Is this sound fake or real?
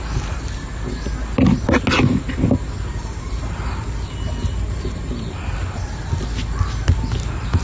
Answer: real